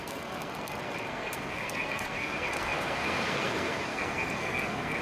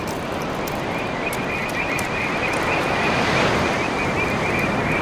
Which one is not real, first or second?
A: first